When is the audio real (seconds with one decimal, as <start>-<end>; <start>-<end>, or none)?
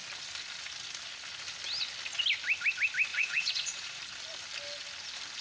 0.0-3.1; 4.0-5.4